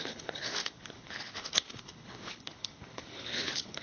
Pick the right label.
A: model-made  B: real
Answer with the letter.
A